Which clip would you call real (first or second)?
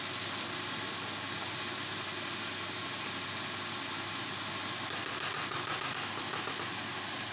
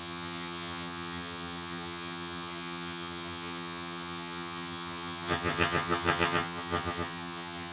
first